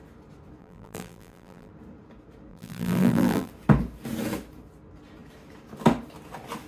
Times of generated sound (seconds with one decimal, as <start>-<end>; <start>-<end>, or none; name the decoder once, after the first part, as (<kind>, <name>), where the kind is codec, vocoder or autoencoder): 0.6-1.7 (vocoder, BigVGAN v2); 2.5-3.5